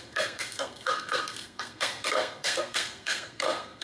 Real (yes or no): no